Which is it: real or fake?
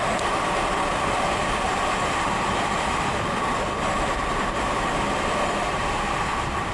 real